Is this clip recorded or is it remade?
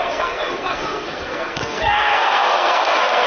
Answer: remade